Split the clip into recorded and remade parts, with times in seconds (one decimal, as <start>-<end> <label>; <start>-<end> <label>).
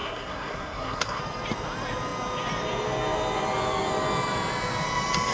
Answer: 0.0-1.2 remade; 1.2-5.3 recorded